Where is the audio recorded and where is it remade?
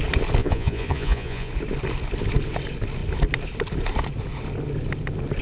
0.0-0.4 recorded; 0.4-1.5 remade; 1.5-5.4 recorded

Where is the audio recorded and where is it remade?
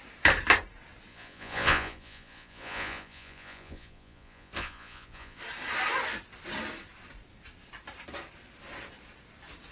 0.0-1.1 recorded; 1.1-5.4 remade; 5.4-9.7 recorded